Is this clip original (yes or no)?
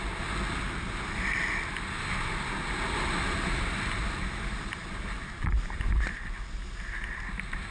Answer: yes